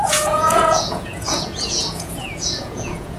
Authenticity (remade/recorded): remade